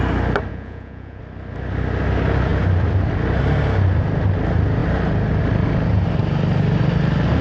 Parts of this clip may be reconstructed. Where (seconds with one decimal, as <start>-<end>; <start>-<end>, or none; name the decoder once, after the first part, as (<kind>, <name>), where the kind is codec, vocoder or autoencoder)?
0.5-1.2 (vocoder, Vocos)